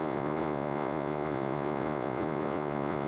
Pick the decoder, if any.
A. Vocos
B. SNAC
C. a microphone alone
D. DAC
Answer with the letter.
A